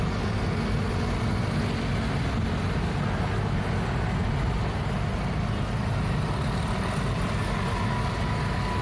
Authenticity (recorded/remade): recorded